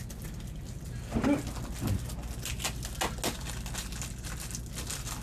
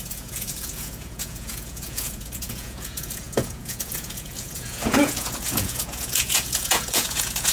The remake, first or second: second